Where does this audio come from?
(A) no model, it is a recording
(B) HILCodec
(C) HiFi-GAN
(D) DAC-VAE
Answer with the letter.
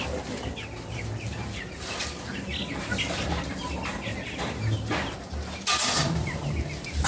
A